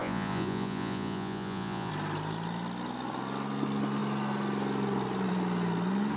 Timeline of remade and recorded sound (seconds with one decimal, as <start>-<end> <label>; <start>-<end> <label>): 0.0-1.9 remade; 1.9-6.2 recorded